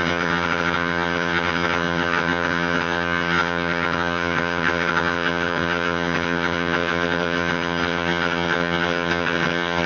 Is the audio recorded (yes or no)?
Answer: no